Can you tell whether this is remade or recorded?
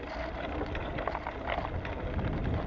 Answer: recorded